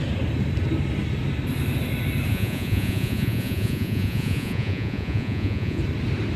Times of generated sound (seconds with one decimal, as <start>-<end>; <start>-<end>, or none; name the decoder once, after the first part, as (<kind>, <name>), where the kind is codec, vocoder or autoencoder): 2.3-5.8 (vocoder, Vocos)